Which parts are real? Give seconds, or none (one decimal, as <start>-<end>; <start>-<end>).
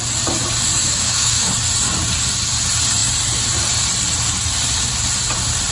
0.0-0.8; 1.5-5.7